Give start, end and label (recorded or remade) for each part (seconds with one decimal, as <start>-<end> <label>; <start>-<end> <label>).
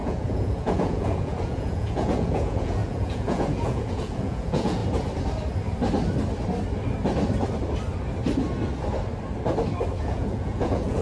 0.0-4.8 remade; 4.8-10.0 recorded; 10.0-11.0 remade